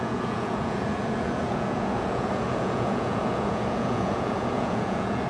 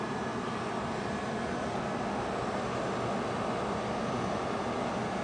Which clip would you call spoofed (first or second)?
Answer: first